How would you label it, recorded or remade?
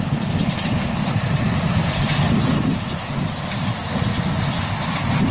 recorded